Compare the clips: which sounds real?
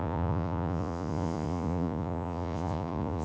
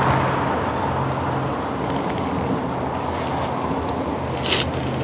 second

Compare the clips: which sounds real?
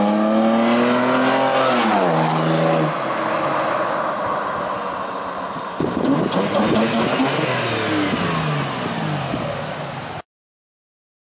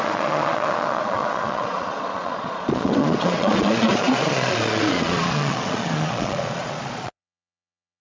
first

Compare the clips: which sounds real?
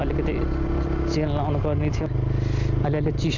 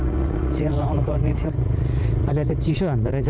first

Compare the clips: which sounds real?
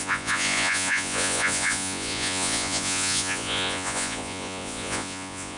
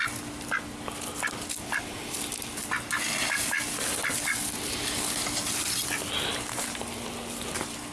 second